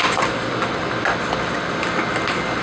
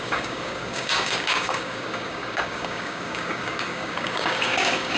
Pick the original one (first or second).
first